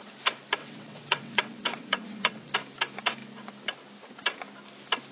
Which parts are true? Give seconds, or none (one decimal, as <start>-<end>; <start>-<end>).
0.0-0.6; 2.5-5.1